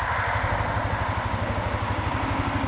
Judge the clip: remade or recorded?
recorded